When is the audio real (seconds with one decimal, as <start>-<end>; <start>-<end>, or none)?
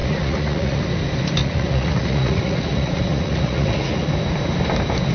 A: 0.8-1.4; 4.1-5.1